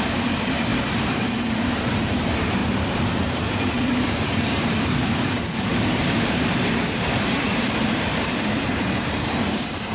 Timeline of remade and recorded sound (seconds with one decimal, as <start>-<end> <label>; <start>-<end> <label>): 0.0-9.9 remade

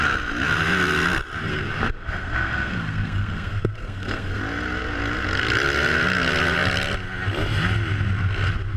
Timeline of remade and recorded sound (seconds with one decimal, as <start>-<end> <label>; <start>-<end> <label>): 0.0-1.5 recorded; 1.5-4.4 remade; 4.4-8.8 recorded